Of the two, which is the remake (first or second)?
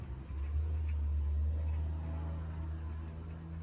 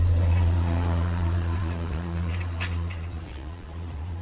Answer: second